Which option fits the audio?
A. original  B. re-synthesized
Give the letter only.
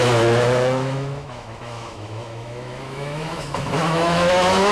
B